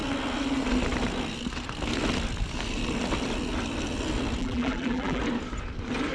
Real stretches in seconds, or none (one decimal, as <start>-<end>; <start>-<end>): 0.0-4.4; 5.2-6.1